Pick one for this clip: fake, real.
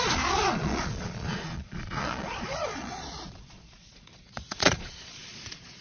fake